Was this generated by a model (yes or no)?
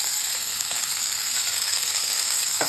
yes